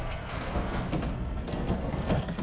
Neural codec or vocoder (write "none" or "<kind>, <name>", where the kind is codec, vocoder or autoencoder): codec, SNAC